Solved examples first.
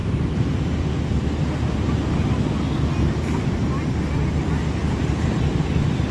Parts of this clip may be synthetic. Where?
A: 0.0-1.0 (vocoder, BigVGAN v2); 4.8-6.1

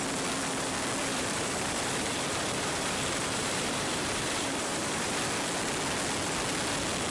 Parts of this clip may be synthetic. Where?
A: 1.1-5.2 (vocoder, BigVGAN v2)

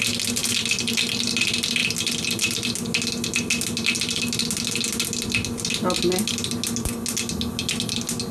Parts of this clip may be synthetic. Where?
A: none

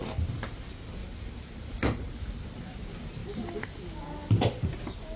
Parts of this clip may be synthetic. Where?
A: 1.0-2.1 (vocoder, BigVGAN v2)

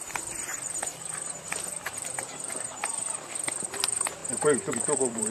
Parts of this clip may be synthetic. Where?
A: 0.0-4.2 (vocoder, BigVGAN v2); 4.7-5.3

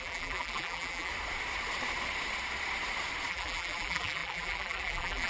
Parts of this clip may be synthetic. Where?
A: 0.0-1.1 (vocoder, BigVGAN v2); 3.3-5.3

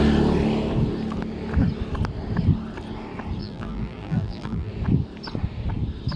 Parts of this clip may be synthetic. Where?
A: 3.4-4.7 (vocoder, BigVGAN v2)

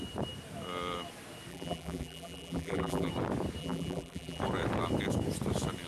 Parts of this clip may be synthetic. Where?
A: 1.5-3.1 (vocoder, BigVGAN v2); 3.6-4.4